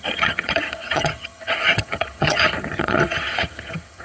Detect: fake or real fake